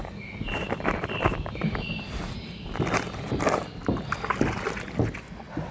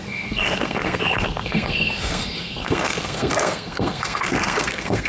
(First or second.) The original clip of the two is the first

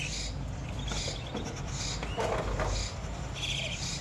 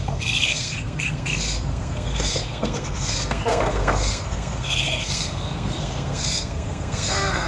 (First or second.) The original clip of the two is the first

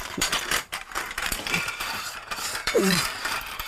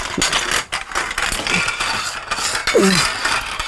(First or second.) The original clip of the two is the second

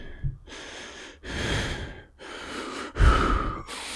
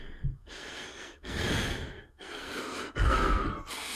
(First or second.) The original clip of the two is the first